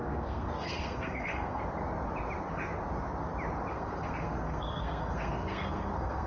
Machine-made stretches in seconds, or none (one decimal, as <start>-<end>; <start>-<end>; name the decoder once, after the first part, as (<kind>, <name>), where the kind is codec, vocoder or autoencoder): 0.0-1.6 (codec, SNAC); 3.7-6.3